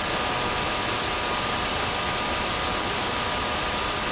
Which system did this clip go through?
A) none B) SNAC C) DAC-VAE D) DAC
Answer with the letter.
A